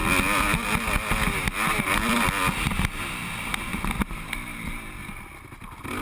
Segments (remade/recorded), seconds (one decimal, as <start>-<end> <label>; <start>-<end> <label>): 0.0-6.0 recorded